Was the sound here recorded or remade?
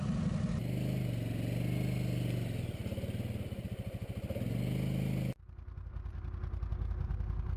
recorded